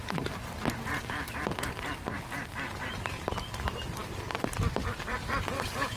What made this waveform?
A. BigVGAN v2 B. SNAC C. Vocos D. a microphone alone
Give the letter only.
A